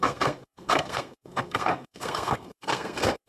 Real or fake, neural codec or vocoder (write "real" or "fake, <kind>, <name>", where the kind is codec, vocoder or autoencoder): fake, codec, SNAC